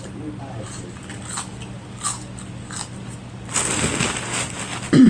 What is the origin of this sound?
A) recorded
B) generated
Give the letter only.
A